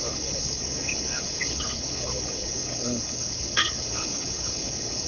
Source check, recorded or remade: remade